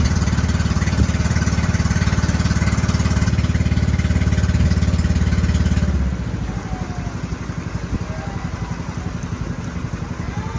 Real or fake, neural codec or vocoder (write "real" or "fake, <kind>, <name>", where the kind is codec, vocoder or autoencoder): real